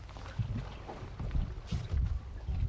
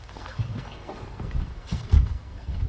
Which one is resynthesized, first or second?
second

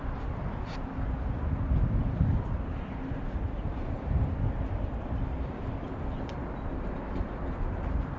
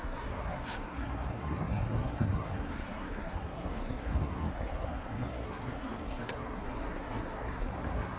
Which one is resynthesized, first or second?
second